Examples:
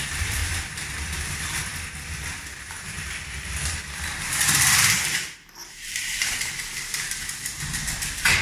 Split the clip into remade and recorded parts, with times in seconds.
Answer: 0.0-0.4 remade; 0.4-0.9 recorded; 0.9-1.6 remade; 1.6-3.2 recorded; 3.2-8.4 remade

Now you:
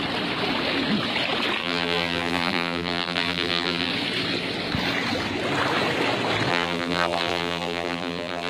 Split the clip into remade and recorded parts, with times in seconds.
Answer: 0.0-1.6 recorded; 1.6-3.9 remade; 3.9-6.5 recorded; 6.5-8.5 remade

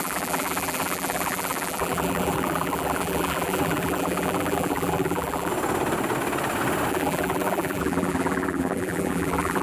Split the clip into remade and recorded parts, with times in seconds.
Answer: 0.0-5.5 remade; 5.5-6.9 recorded; 6.9-9.6 remade

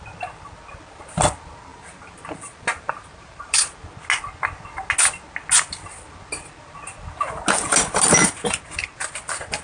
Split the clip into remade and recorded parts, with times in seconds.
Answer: 0.0-1.7 recorded; 1.7-3.8 remade; 3.8-9.6 recorded

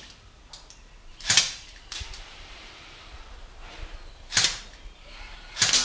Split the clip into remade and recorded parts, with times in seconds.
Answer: 0.0-1.1 recorded; 1.1-4.6 remade; 4.6-5.8 recorded

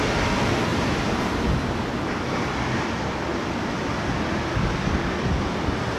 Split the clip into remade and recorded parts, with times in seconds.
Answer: 0.0-0.7 recorded; 0.7-1.5 remade; 1.5-6.0 recorded